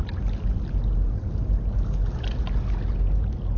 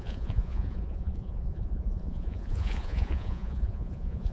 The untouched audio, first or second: first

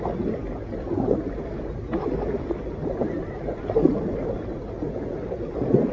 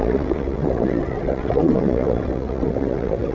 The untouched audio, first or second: first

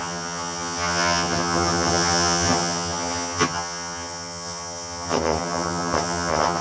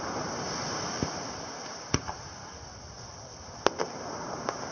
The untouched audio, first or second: second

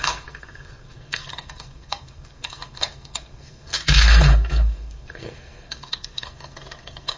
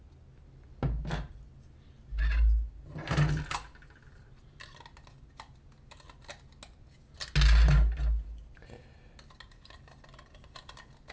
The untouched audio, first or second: second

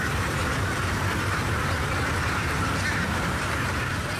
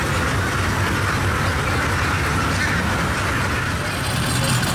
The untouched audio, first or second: second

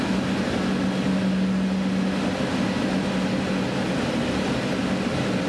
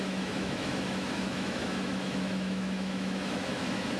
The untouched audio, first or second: first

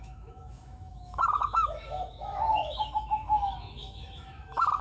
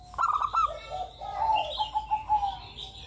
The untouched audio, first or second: second